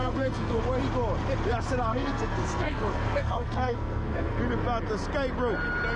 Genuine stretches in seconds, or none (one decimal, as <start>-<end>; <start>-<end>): 0.6-1.9; 4.4-6.0